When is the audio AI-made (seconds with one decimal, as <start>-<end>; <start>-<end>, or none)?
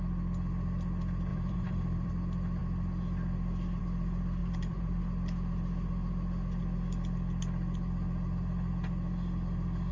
1.3-2.1; 4.4-5.0